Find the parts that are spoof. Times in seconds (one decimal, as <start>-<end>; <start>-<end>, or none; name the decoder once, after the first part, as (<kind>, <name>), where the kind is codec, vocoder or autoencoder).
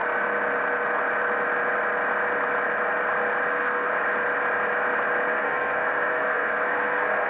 3.5-3.9 (codec, SNAC); 5.3-7.3